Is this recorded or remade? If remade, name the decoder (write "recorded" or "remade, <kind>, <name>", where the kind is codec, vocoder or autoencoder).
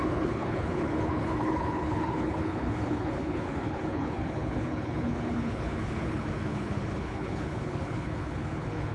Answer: remade, codec, HILCodec